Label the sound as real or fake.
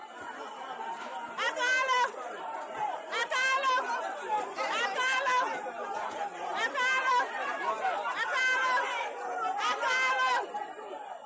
fake